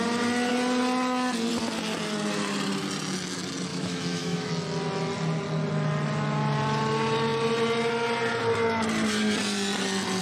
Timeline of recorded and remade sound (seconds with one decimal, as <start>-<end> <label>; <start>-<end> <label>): 0.0-3.7 recorded; 3.7-4.5 remade; 4.5-10.2 recorded